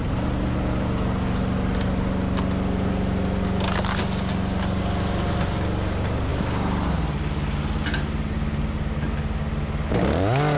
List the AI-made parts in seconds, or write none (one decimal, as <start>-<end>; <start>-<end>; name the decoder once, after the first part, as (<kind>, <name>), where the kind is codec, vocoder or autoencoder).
none